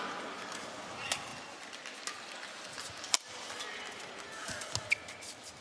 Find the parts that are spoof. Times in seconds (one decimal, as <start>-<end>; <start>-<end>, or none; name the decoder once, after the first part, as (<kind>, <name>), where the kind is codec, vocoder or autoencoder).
none

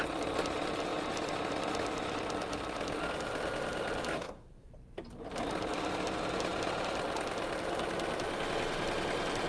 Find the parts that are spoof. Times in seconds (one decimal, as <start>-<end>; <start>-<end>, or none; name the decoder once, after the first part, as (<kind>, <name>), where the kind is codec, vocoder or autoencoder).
4.1-4.7 (codec, SNAC)

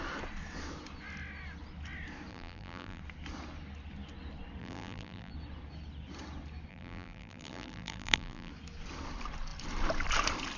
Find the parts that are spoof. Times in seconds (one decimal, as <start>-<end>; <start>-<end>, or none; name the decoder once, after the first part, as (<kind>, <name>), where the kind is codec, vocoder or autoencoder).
2.3-3.0 (vocoder, BigVGAN v2); 4.6-5.3; 6.7-8.5